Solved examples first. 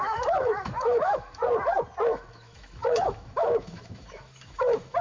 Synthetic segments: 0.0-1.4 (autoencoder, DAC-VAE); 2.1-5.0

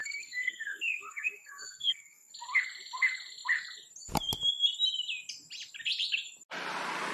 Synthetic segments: 0.0-2.3 (codec, SNAC)

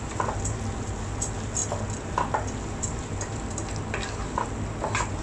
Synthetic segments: none

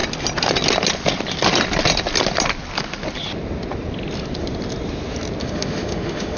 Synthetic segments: 5.4-6.4 (autoencoder, DAC-VAE)